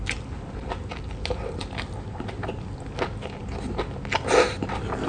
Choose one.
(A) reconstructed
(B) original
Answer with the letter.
B